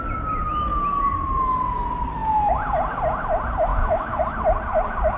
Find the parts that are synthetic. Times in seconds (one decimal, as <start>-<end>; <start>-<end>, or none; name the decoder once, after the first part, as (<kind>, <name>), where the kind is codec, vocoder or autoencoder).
3.7-4.2 (autoencoder, DAC-VAE)